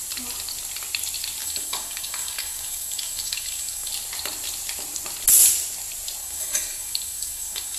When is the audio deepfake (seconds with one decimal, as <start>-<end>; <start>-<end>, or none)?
1.4-3.9; 6.2-7.8